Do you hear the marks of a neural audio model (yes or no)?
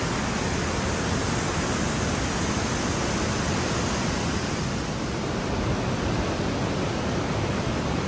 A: no